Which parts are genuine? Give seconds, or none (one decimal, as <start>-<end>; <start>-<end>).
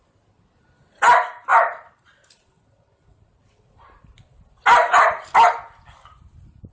0.0-1.5; 5.5-6.7